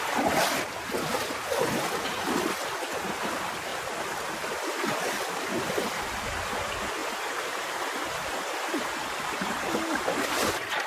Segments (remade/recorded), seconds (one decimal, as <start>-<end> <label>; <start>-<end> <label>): 0.0-3.7 recorded; 3.7-6.4 remade; 6.4-10.9 recorded